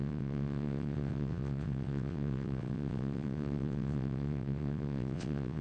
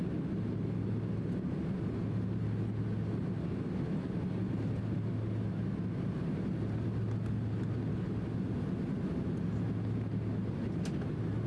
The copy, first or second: first